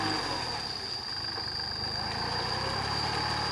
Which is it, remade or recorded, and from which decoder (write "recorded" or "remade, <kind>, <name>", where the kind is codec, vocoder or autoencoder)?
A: recorded